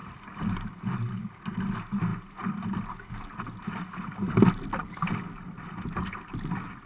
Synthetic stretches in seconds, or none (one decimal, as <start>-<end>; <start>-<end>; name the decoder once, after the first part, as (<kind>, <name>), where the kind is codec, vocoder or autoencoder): 0.0-0.7 (vocoder, BigVGAN v2)